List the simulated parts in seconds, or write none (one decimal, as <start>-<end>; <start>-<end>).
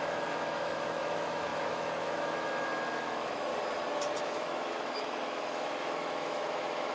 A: 0.0-3.5; 4.2-6.9